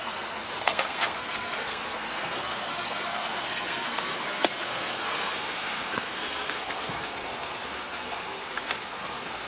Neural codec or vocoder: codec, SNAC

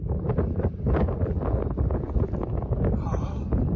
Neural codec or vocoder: none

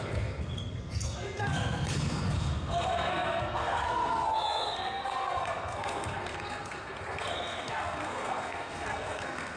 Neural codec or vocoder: codec, SNAC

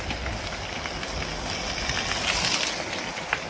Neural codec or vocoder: none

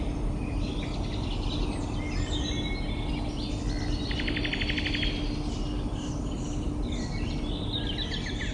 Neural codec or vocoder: none